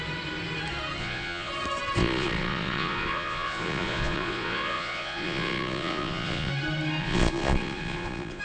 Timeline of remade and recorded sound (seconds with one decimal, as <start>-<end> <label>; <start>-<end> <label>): 0.0-1.0 recorded; 1.0-1.5 remade; 1.5-2.0 recorded; 2.0-6.5 remade; 6.5-7.0 recorded; 7.0-8.4 remade